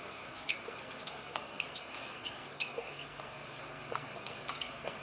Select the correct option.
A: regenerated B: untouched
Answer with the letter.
A